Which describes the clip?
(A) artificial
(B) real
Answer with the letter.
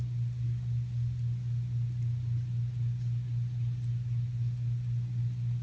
B